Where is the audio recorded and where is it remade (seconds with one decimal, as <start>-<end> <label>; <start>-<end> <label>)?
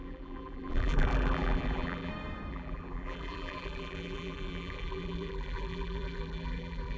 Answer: 0.0-2.1 remade; 2.1-2.5 recorded; 2.5-7.0 remade